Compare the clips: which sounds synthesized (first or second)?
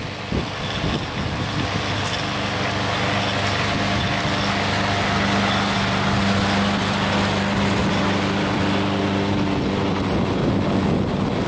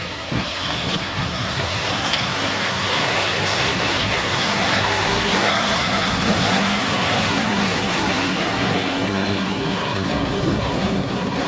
second